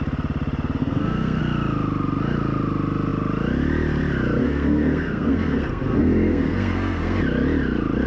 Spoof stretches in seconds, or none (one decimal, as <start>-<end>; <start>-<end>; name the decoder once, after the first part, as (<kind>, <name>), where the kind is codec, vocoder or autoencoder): 0.8-1.4 (codec, SNAC); 4.4-7.2